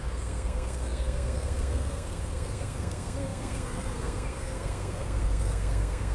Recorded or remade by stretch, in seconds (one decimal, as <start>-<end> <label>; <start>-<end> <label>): 0.0-6.1 remade